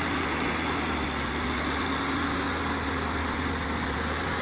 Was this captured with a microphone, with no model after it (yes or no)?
yes